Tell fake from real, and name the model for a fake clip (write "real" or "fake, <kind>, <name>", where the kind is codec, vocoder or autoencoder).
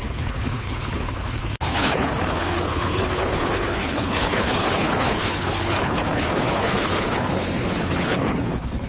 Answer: fake, codec, HILCodec